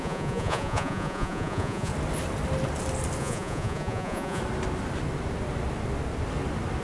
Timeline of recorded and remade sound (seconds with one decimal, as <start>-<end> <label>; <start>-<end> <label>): 0.0-1.9 remade; 1.9-3.2 recorded; 3.2-4.4 remade; 4.4-6.8 recorded

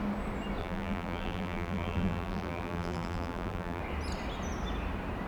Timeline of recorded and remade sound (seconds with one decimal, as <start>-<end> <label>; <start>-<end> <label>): 0.0-0.6 recorded; 0.6-3.8 remade; 3.8-5.3 recorded

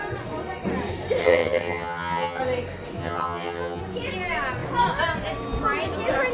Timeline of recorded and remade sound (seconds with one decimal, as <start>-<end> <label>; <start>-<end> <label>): 0.0-1.2 recorded; 1.2-2.4 remade; 2.4-3.0 recorded; 3.0-3.8 remade; 3.8-6.3 recorded